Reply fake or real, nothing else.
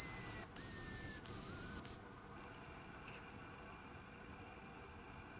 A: real